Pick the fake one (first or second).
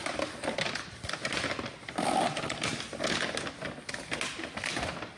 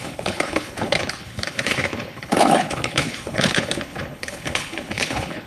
second